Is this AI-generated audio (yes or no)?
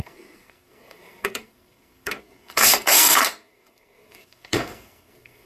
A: yes